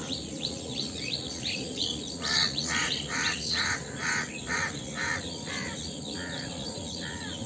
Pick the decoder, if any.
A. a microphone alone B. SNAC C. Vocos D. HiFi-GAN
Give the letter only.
C